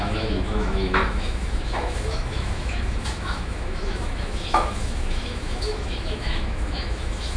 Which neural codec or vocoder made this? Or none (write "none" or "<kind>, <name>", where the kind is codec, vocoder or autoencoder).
autoencoder, DAC-VAE